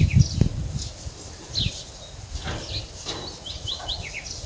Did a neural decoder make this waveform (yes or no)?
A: no